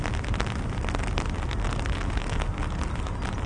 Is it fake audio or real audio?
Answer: real